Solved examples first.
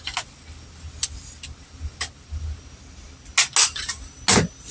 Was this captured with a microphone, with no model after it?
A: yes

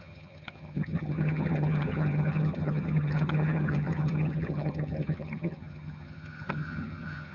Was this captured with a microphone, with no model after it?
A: no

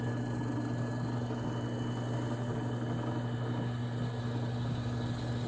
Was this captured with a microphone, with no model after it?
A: yes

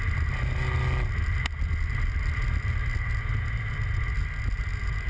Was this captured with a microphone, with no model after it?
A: yes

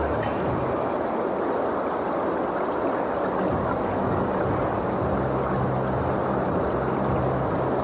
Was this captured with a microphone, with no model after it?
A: yes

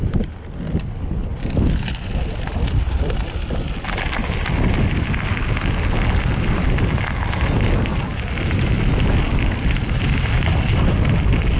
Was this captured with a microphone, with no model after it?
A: yes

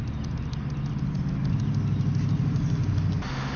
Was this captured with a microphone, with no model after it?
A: yes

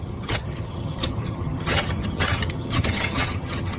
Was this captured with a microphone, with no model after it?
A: no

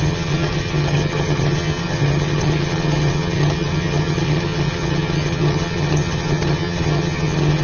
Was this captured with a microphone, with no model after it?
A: no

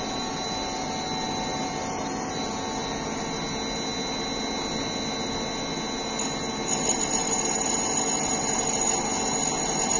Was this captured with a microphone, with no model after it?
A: yes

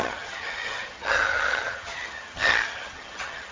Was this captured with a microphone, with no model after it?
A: no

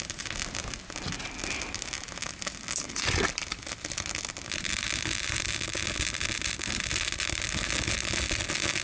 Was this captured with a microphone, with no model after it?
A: yes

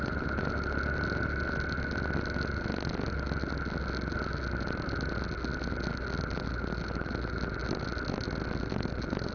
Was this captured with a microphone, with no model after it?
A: yes